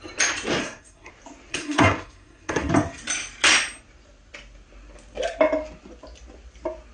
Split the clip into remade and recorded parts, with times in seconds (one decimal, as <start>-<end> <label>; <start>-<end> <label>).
0.0-0.6 recorded; 0.6-1.1 remade; 1.1-1.5 recorded; 1.5-2.7 remade; 2.7-6.9 recorded